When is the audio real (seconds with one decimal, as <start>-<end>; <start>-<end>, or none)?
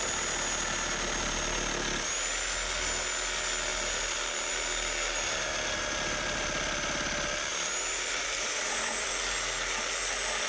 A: 0.0-3.7; 4.5-7.5; 9.1-10.5